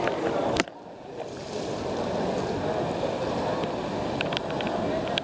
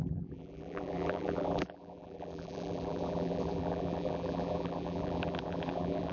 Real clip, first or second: first